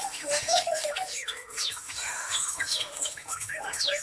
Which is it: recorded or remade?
remade